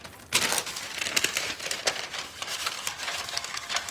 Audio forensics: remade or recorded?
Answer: recorded